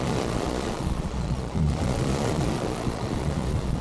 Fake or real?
fake